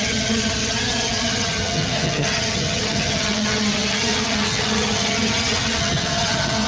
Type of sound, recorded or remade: remade